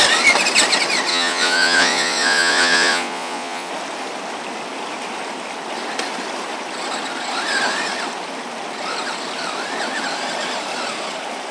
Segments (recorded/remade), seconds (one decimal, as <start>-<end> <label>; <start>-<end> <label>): 0.0-1.1 recorded; 1.1-3.7 remade; 3.7-11.5 recorded